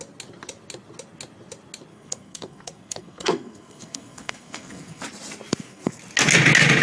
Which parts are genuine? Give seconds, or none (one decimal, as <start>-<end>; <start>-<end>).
0.0-1.9; 5.0-5.5; 6.0-6.8